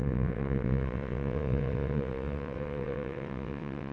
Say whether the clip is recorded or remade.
remade